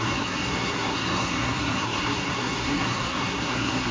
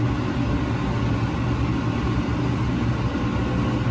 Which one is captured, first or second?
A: second